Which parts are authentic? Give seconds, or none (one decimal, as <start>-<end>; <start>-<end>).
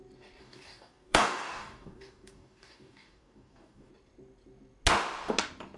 0.0-0.4; 3.9-5.8